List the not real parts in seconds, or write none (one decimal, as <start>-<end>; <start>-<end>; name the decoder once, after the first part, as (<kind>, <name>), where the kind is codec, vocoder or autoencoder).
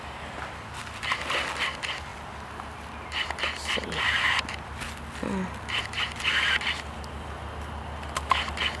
none